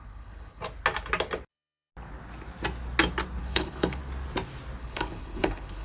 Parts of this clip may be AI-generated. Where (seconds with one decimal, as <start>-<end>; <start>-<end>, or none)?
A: 0.0-0.6; 1.5-1.9; 3.4-4.0; 4.8-5.8